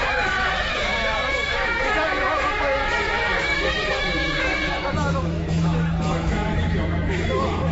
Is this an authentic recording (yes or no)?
no